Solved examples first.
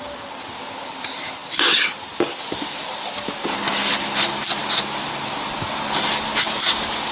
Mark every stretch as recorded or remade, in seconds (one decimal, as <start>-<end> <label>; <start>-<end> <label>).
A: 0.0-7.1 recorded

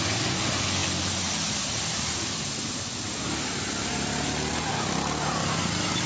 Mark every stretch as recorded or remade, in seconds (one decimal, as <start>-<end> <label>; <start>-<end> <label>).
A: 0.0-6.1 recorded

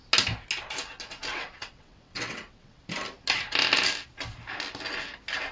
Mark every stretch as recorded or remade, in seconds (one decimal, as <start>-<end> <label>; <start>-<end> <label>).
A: 0.0-1.3 recorded; 1.3-2.8 remade; 2.8-5.5 recorded

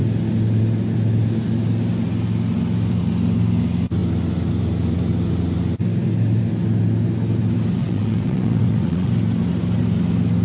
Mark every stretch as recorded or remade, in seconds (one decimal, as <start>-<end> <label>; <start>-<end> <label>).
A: 0.0-7.8 recorded; 7.8-9.1 remade; 9.1-10.4 recorded

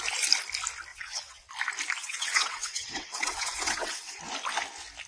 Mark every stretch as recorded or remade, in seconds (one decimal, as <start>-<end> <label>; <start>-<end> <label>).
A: 0.0-0.9 recorded; 0.9-1.5 remade; 1.5-2.0 recorded; 2.0-4.2 remade; 4.2-5.1 recorded

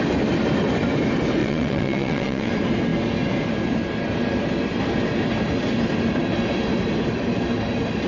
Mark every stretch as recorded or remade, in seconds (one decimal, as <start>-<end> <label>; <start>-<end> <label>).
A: 0.0-1.4 recorded; 1.4-2.5 remade; 2.5-8.1 recorded

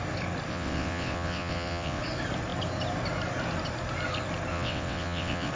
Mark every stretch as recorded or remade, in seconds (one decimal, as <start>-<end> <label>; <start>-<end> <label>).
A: 0.0-0.5 recorded; 0.5-2.0 remade; 2.0-4.5 recorded; 4.5-5.5 remade